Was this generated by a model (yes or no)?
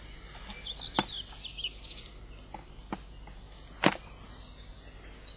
no